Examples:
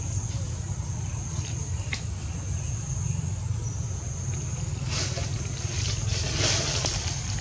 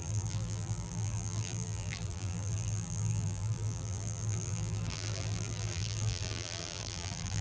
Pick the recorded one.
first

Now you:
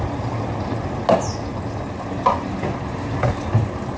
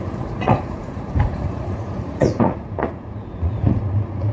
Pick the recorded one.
first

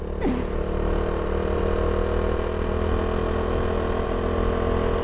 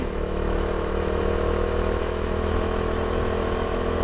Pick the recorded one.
first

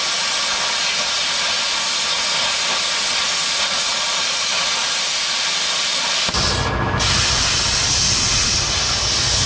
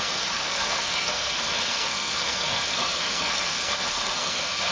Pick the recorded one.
first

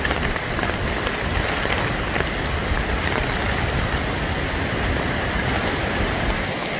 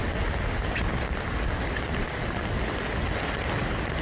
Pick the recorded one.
second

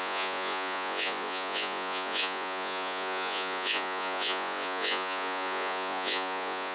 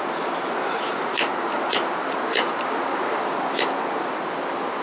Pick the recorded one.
second